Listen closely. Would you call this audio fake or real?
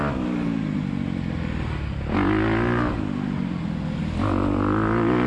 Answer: real